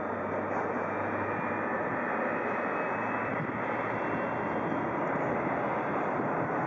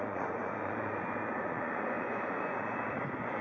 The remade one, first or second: second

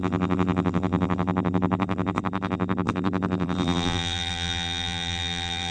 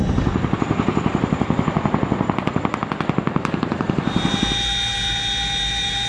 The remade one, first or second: first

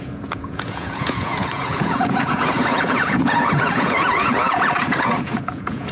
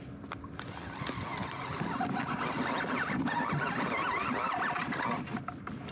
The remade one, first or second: first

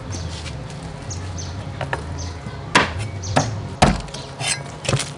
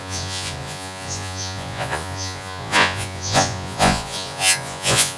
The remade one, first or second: second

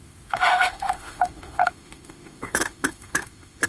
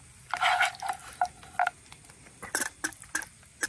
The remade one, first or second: first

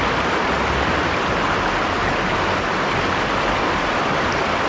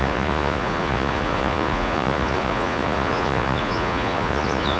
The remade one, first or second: second